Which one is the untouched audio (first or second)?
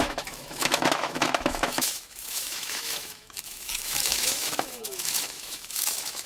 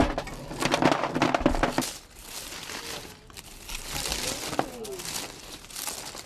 second